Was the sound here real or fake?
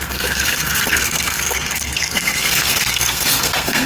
fake